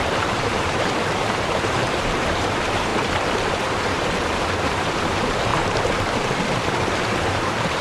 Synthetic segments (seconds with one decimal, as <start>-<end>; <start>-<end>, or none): 0.0-5.5; 6.7-7.8